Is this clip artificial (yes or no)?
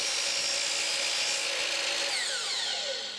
no